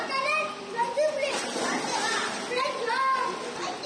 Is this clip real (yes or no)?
yes